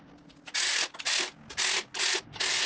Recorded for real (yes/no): yes